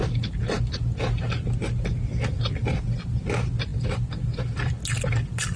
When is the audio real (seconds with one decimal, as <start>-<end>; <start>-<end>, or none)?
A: 0.0-5.6